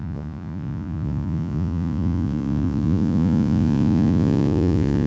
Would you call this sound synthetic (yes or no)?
yes